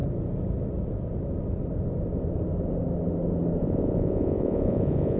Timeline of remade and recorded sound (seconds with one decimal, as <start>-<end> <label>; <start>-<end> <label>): 0.0-3.6 recorded; 3.6-5.2 remade

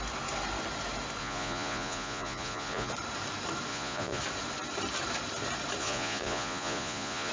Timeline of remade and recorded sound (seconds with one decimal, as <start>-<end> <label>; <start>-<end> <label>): 0.0-1.2 recorded; 1.2-2.9 remade; 2.9-3.7 recorded; 3.7-4.2 remade; 4.2-5.8 recorded; 5.8-7.3 remade

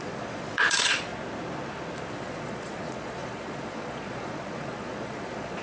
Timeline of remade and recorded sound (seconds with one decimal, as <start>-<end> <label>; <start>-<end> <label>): 0.0-1.1 remade; 1.1-2.1 recorded; 2.1-5.6 remade

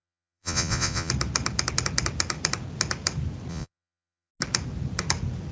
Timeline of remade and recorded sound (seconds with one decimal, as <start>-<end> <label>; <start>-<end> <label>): 0.0-1.1 remade; 1.1-3.5 recorded; 3.5-4.3 remade; 4.3-5.5 recorded